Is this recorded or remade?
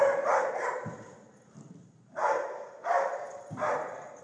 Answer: remade